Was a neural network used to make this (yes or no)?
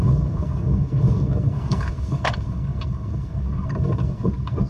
yes